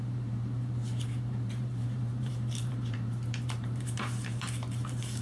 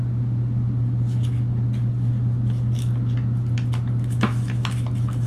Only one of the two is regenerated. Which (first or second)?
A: first